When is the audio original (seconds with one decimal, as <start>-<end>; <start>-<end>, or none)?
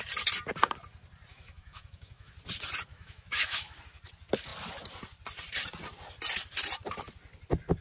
0.0-1.3; 2.3-2.9; 3.8-7.8